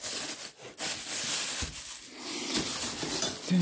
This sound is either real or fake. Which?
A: real